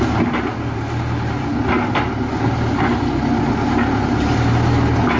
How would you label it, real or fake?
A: real